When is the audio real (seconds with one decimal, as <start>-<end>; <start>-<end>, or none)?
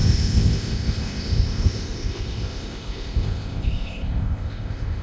none